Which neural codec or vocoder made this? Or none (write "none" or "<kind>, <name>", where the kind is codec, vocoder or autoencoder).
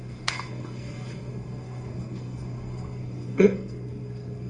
codec, SNAC